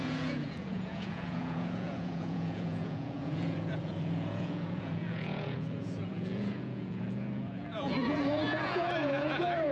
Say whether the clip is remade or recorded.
remade